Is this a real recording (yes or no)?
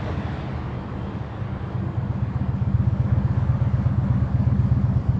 no